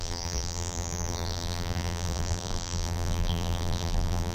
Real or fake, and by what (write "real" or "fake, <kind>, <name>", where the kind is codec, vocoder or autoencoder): fake, vocoder, BigVGAN v2